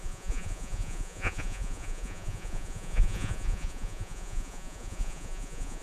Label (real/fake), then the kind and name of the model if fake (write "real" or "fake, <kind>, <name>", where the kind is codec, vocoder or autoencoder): fake, vocoder, Vocos